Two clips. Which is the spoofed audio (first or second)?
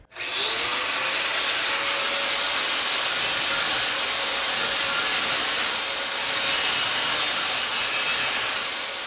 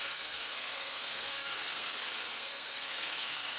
second